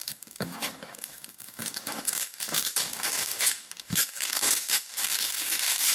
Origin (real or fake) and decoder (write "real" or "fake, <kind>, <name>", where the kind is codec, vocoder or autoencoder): fake, codec, DAC